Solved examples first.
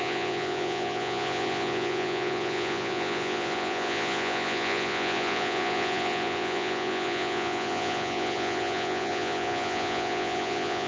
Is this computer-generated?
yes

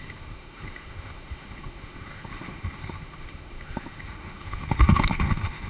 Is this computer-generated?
yes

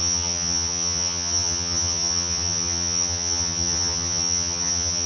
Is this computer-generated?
yes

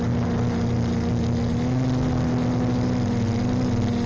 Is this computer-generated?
no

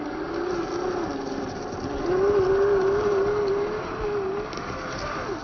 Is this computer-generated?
no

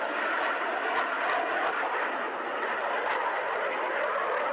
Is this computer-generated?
no